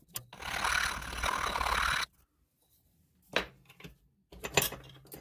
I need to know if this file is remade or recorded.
recorded